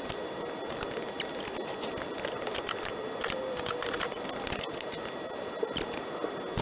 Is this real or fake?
real